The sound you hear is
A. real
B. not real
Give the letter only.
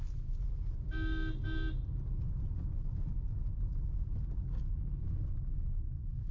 A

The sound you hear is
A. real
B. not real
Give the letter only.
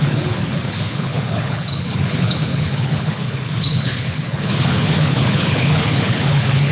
B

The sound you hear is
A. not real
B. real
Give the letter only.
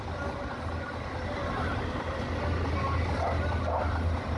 B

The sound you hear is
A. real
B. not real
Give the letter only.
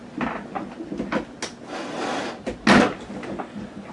A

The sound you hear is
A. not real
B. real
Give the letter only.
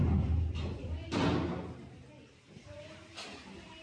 B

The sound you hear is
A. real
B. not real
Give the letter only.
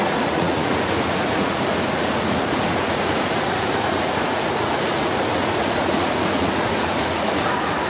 B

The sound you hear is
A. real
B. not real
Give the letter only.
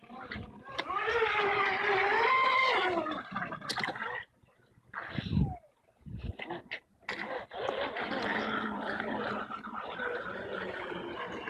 A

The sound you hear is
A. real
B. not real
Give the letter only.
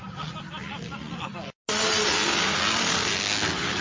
A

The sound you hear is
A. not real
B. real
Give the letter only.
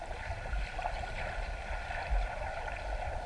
B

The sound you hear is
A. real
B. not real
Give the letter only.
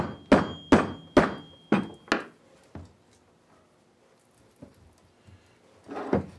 A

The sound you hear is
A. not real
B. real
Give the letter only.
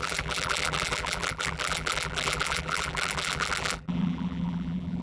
A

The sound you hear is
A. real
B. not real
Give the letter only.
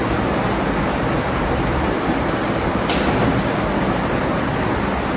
A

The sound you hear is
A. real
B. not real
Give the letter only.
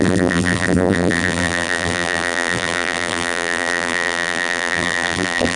B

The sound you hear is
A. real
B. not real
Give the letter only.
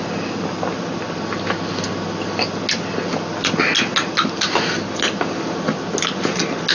A